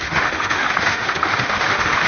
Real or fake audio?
fake